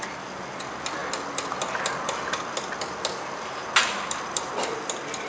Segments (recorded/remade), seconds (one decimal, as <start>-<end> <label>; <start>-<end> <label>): 0.0-5.3 recorded